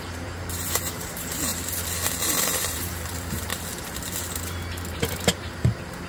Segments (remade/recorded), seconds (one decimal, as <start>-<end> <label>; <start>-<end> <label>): 0.0-1.5 remade; 1.5-2.1 recorded; 2.1-3.5 remade; 3.5-4.9 recorded; 4.9-6.1 remade